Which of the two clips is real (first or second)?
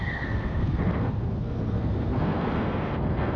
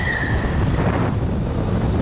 second